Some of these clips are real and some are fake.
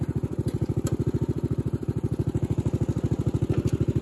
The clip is real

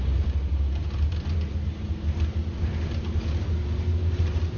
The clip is real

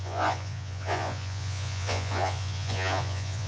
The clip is fake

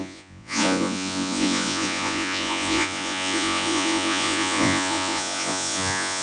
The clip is fake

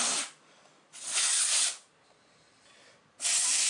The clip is real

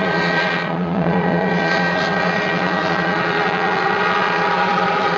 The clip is fake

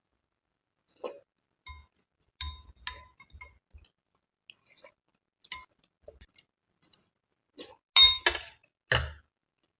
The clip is real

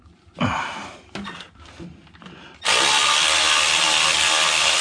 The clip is real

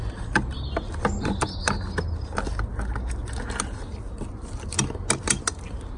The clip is real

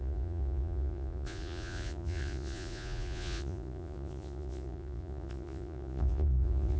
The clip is fake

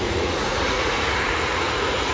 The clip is fake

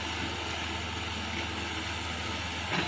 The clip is real